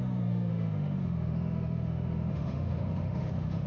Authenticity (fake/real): fake